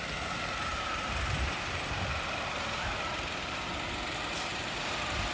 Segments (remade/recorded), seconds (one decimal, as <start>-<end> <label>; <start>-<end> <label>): 0.0-0.7 recorded; 0.7-3.7 remade; 3.7-4.5 recorded; 4.5-5.3 remade